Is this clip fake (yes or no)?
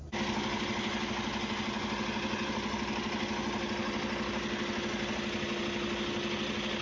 no